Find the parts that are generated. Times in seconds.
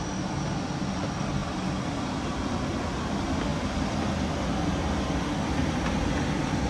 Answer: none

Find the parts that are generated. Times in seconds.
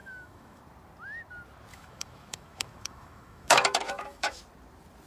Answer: 0.0-0.6 (autoencoder, DAC-VAE); 1.7-4.4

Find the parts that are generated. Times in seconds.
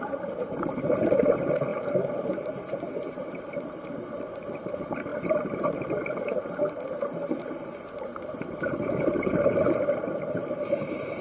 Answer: 0.0-11.2 (vocoder, BigVGAN v2)